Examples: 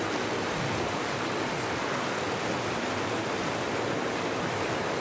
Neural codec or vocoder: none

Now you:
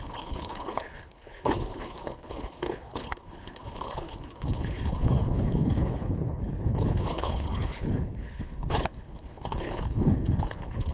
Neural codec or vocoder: codec, HILCodec